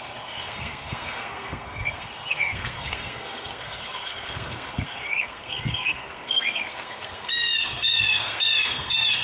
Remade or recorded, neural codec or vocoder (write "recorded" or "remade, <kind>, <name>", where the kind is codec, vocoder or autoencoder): remade, codec, SNAC